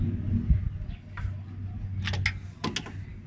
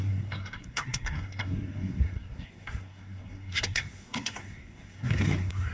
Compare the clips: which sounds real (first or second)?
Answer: first